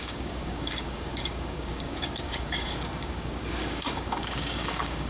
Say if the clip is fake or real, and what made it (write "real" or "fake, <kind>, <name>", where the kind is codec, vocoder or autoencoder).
fake, codec, DAC